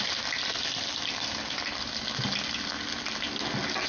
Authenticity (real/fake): real